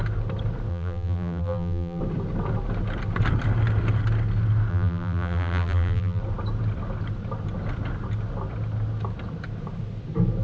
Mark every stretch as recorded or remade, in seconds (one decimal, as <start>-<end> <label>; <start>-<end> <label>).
0.0-0.7 recorded; 0.7-2.0 remade; 2.0-4.7 recorded; 4.7-6.2 remade; 6.2-10.4 recorded